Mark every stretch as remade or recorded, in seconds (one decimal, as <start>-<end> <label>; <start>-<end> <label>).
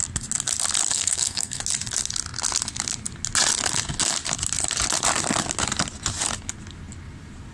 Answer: 0.0-0.9 recorded; 0.9-1.6 remade; 1.6-7.5 recorded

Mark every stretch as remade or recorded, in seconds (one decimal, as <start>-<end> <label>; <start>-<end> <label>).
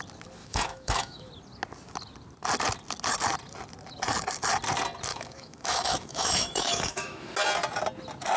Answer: 0.0-0.4 recorded; 0.4-1.3 remade; 1.3-5.1 recorded; 5.1-7.3 remade; 7.3-8.4 recorded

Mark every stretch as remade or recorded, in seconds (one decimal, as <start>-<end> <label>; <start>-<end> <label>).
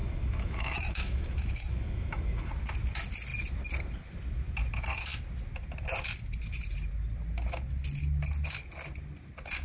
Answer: 0.0-2.5 remade; 2.5-9.6 recorded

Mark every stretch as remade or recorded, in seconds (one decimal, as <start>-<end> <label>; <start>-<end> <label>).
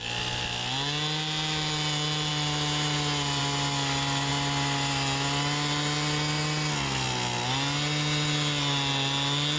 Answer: 0.0-9.6 recorded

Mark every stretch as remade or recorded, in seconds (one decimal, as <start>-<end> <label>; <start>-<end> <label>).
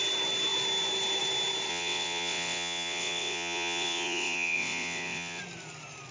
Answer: 0.0-1.7 recorded; 1.7-5.4 remade; 5.4-6.1 recorded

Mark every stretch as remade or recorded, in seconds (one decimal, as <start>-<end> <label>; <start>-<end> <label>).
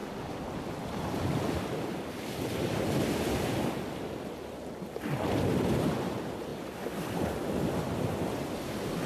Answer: 0.0-9.1 recorded